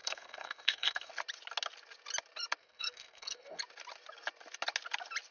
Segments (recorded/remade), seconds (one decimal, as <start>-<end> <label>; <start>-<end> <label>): 0.0-1.1 remade; 1.1-2.6 recorded; 2.6-3.6 remade; 3.6-5.3 recorded